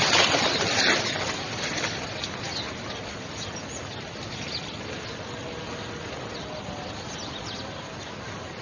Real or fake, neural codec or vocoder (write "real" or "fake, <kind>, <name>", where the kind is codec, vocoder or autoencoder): real